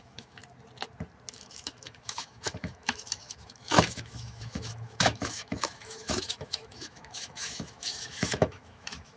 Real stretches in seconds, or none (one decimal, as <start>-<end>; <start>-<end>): 0.4-1.3

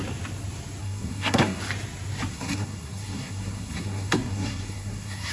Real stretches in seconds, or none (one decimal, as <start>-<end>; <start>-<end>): 0.0-0.8; 1.6-2.3

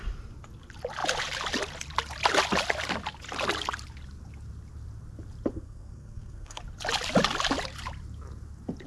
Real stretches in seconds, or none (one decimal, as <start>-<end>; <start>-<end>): 0.0-5.5; 6.6-8.9